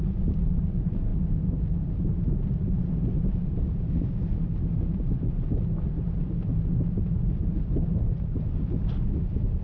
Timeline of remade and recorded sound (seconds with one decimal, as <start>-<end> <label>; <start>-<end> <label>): 0.0-9.6 recorded